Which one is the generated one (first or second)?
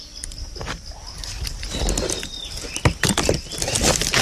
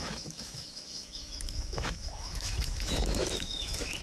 second